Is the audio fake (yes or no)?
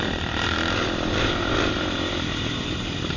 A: yes